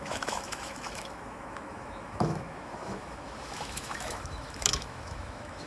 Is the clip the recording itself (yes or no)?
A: no